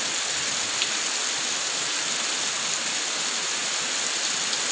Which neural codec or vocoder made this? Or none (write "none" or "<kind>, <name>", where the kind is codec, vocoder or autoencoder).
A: none